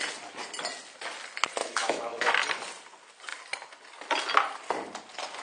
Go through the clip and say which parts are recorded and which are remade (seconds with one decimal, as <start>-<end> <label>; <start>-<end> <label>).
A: 0.0-1.6 recorded; 1.6-2.3 remade; 2.3-5.4 recorded